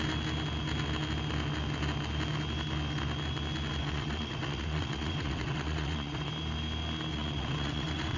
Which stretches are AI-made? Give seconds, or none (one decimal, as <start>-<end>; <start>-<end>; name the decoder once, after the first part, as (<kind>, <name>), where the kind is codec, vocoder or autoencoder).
3.8-6.3 (vocoder, WaveNeXt); 7.1-8.2